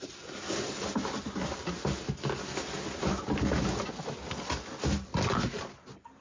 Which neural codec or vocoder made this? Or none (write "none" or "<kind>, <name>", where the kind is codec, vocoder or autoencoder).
none